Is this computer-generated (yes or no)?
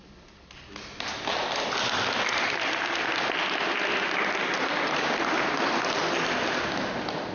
no